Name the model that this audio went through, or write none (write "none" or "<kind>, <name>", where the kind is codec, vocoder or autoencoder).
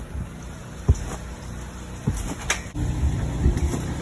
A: none